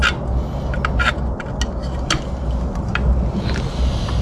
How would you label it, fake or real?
real